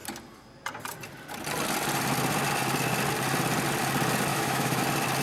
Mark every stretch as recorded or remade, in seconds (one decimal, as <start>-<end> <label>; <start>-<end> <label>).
0.0-4.3 recorded; 4.3-4.8 remade; 4.8-5.2 recorded